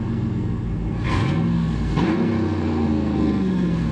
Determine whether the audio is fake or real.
fake